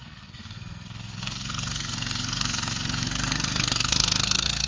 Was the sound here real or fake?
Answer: fake